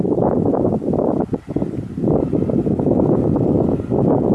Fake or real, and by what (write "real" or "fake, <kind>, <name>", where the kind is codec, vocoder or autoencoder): real